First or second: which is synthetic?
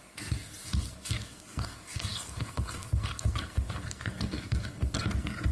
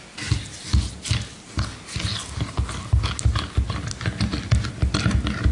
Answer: first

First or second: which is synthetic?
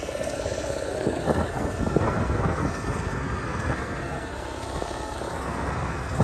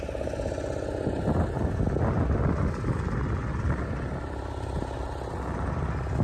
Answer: first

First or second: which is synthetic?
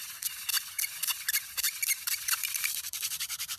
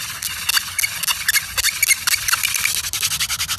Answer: first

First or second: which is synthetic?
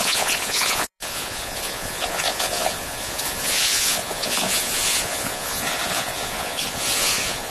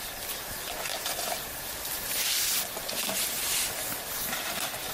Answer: first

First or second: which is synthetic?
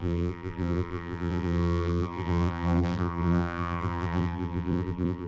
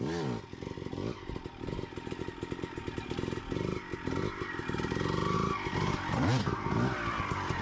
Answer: first